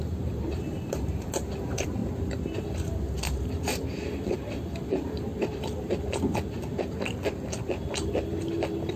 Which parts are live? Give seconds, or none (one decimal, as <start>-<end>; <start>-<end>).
2.0-2.6; 5.3-8.0